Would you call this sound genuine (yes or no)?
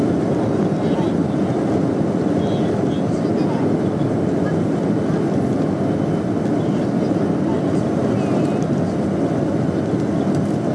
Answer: yes